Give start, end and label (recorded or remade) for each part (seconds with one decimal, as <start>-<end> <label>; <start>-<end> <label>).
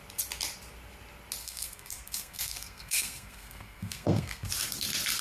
0.0-1.4 recorded; 1.4-4.5 remade; 4.5-5.2 recorded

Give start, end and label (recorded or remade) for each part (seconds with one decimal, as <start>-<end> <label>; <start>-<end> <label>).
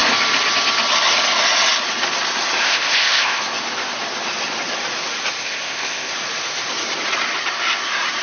0.0-2.6 recorded; 2.6-3.4 remade; 3.4-5.4 recorded; 5.4-6.1 remade; 6.1-8.2 recorded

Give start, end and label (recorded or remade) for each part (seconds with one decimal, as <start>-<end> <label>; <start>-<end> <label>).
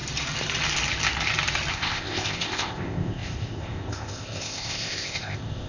0.0-1.7 recorded; 1.7-5.7 remade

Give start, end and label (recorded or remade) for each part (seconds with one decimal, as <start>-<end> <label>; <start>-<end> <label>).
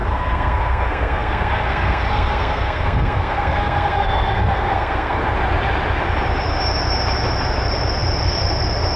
0.0-5.2 remade; 5.2-9.0 recorded